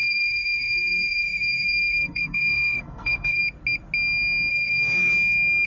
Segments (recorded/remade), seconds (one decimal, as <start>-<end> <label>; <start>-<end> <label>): 0.0-3.4 remade; 3.4-4.5 recorded; 4.5-5.1 remade; 5.1-5.7 recorded